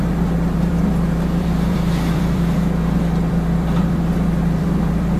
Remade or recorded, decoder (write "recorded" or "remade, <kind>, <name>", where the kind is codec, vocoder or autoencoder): remade, vocoder, BigVGAN v2